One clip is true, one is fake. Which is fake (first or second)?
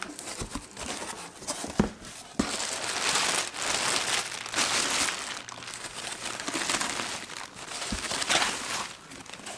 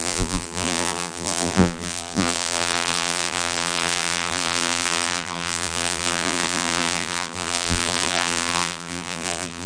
second